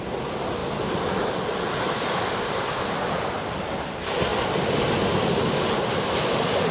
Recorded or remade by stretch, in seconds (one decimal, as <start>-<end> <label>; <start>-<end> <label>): 0.0-6.7 recorded